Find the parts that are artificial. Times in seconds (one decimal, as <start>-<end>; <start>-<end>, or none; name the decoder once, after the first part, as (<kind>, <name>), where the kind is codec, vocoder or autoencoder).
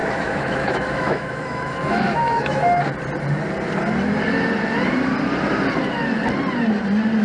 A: 0.0-2.8 (autoencoder, DAC-VAE)